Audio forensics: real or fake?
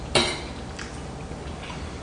real